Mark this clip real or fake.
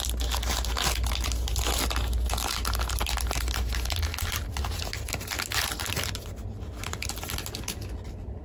real